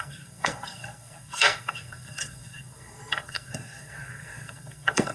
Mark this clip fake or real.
fake